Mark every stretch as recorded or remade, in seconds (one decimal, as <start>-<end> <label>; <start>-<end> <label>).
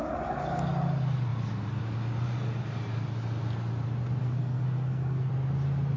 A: 0.0-4.2 recorded; 4.2-5.3 remade; 5.3-6.0 recorded